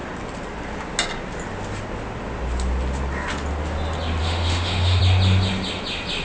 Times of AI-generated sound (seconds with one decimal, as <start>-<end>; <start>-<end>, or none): 4.2-5.0